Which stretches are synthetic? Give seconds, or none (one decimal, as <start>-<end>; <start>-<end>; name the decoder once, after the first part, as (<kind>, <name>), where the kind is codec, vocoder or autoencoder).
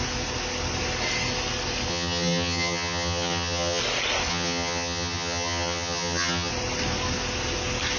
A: 1.9-3.8 (vocoder, HiFi-GAN); 4.3-6.5